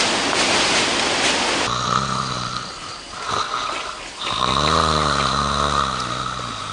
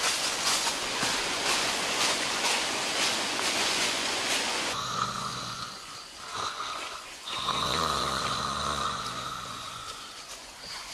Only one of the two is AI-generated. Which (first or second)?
second